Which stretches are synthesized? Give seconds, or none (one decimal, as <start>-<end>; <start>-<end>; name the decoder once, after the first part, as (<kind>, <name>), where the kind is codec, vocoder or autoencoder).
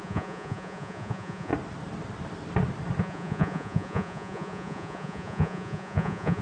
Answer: 0.0-1.5 (vocoder, Vocos); 3.0-6.4